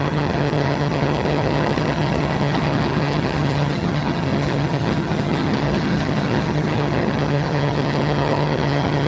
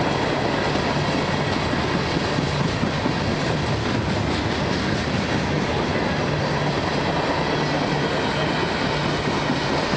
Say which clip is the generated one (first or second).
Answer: first